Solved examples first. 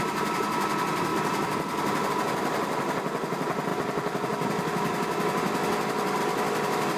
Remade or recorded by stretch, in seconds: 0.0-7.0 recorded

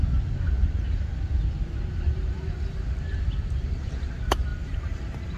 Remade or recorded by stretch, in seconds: 0.0-4.5 recorded; 4.5-5.0 remade; 5.0-5.4 recorded

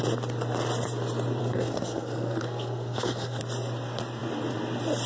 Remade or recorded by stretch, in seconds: 0.0-1.4 recorded; 1.4-3.4 remade; 3.4-5.1 recorded

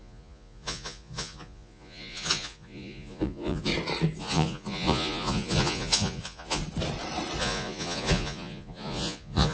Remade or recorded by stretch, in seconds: 0.0-3.7 remade; 3.7-4.2 recorded; 4.2-6.6 remade; 6.6-7.4 recorded; 7.4-9.5 remade

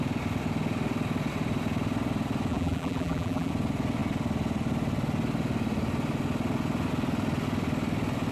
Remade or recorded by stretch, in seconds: 0.0-2.5 recorded; 2.5-3.5 remade; 3.5-8.3 recorded

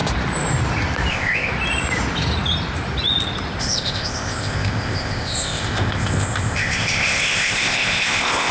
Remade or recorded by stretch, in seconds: 0.0-1.1 recorded; 1.1-1.5 remade; 1.5-3.6 recorded; 3.6-8.5 remade

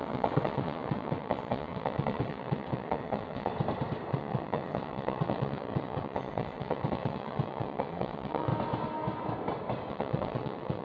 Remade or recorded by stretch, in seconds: 0.0-3.5 remade; 3.5-4.1 recorded; 4.1-8.5 remade; 8.5-9.9 recorded; 9.9-10.8 remade

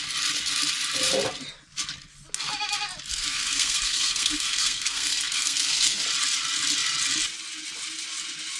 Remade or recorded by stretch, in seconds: 0.0-3.1 recorded; 3.1-6.0 remade; 6.0-8.6 recorded